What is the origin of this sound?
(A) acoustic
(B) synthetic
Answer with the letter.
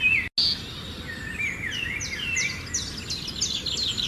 A